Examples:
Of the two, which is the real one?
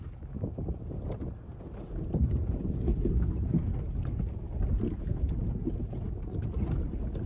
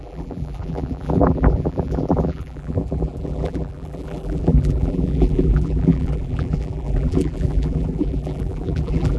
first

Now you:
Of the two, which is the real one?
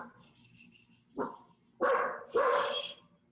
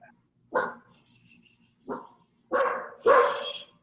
second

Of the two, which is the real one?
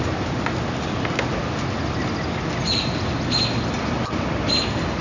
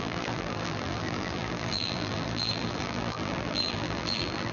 first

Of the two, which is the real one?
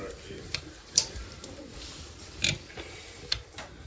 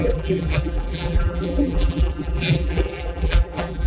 first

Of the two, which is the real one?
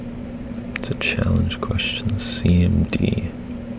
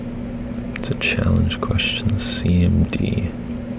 second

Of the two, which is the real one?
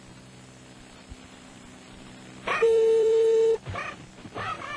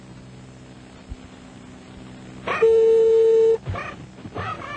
second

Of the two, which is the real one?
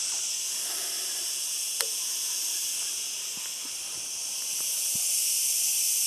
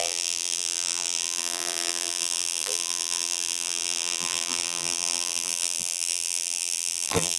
first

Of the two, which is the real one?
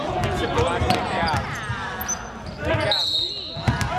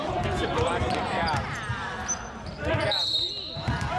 first